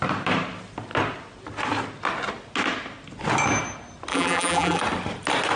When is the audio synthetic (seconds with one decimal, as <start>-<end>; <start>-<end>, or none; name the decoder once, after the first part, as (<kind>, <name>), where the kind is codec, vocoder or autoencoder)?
4.1-4.8 (vocoder, BigVGAN v2)